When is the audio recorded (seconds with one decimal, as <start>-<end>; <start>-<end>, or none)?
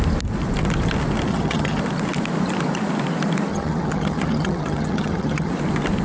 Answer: 0.0-1.3; 1.8-3.5; 5.5-6.0